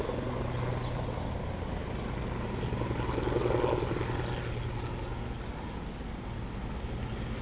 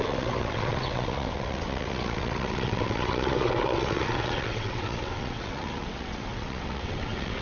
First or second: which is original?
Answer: first